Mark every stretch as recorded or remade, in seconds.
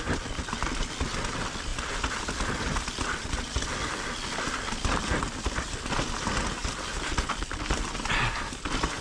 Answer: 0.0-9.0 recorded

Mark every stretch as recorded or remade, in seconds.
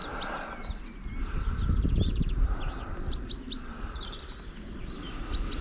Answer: 0.0-5.6 recorded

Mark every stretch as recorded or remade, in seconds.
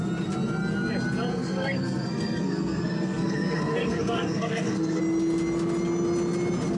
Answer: 0.0-1.3 recorded; 1.3-5.0 remade; 5.0-6.8 recorded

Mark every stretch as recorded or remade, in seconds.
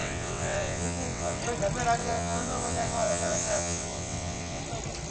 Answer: 0.0-1.4 remade; 1.4-2.0 recorded; 2.0-4.6 remade; 4.6-5.1 recorded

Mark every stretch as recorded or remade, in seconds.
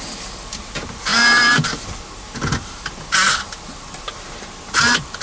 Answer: 0.0-1.1 remade; 1.1-4.2 recorded; 4.2-5.2 remade